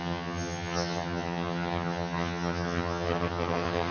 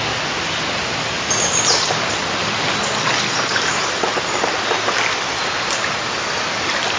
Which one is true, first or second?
second